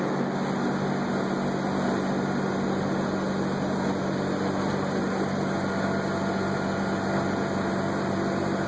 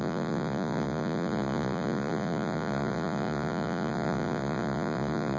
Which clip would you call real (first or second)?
first